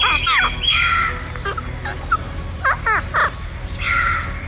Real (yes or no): yes